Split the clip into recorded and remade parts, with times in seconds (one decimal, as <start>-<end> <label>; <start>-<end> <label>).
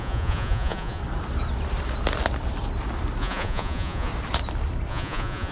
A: 0.0-1.0 remade; 1.0-3.2 recorded; 3.2-4.1 remade; 4.1-4.9 recorded; 4.9-5.5 remade